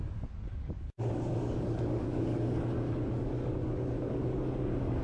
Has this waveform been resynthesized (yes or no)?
yes